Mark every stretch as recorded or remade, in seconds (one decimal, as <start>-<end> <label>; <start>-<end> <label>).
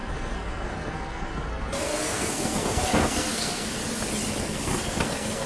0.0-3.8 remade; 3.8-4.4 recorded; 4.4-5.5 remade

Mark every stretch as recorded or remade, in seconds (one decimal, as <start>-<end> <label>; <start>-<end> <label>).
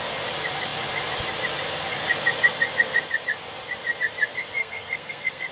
0.0-4.6 recorded; 4.6-5.5 remade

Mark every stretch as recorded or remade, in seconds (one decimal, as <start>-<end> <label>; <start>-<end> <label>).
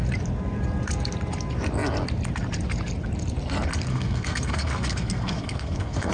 0.0-3.9 recorded; 3.9-6.1 remade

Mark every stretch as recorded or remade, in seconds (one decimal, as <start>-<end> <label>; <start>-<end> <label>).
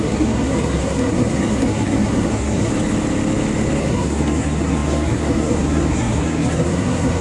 0.0-2.7 remade; 2.7-3.8 recorded; 3.8-7.2 remade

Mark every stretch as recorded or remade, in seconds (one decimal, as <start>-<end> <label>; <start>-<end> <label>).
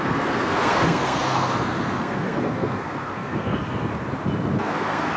0.0-3.9 remade; 3.9-4.6 recorded; 4.6-5.2 remade